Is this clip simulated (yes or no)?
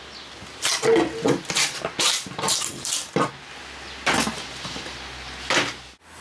no